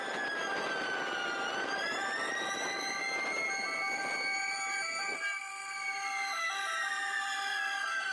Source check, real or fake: fake